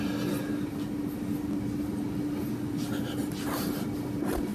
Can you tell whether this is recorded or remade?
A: recorded